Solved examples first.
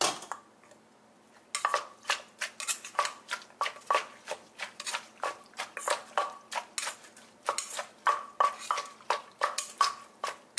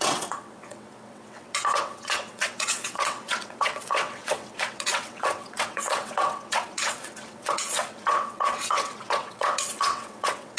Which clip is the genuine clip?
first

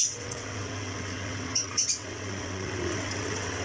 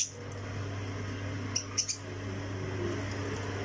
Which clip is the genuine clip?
second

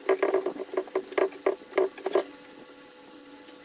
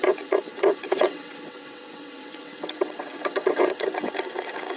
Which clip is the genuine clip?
first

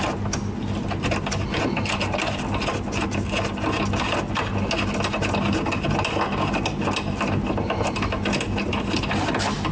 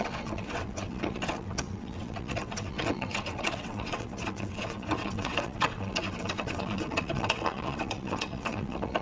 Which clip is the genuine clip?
first